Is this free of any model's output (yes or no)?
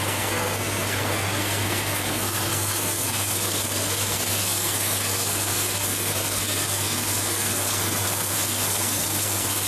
no